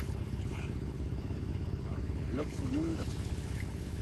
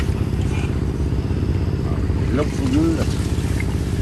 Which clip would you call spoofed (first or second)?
first